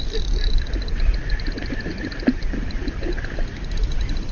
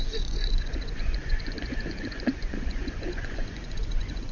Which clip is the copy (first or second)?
second